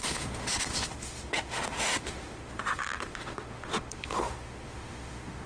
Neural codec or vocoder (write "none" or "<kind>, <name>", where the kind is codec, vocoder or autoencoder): autoencoder, DAC-VAE